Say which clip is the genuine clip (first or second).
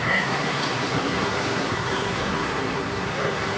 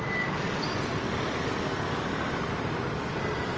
second